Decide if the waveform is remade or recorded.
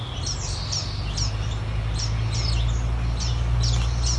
recorded